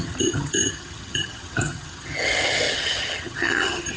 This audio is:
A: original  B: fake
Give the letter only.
B